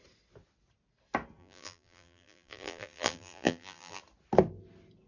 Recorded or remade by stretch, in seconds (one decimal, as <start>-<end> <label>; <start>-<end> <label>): 0.0-1.4 recorded; 1.4-4.0 remade; 4.0-5.1 recorded